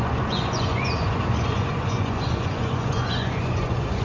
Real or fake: fake